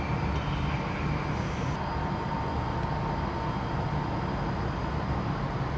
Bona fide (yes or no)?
yes